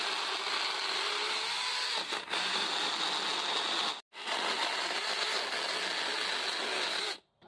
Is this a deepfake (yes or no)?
no